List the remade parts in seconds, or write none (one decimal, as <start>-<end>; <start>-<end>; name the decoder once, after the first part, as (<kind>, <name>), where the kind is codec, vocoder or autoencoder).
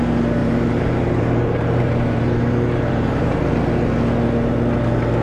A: 0.4-3.4 (vocoder, BigVGAN v2)